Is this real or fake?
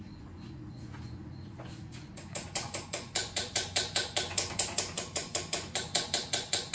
fake